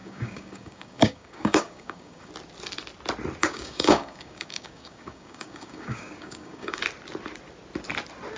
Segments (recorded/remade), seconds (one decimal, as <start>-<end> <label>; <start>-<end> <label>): 0.0-2.3 remade; 2.3-3.4 recorded; 3.4-6.8 remade; 6.8-8.4 recorded